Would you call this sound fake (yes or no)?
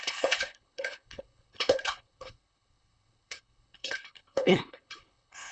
yes